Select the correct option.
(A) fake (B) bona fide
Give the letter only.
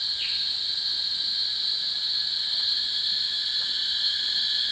B